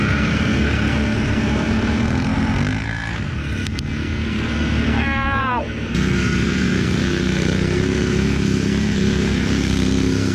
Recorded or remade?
remade